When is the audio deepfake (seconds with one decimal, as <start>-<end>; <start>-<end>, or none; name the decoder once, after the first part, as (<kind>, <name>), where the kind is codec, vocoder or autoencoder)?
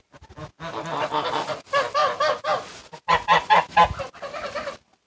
none